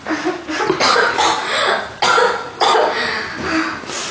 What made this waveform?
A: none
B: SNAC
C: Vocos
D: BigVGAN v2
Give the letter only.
A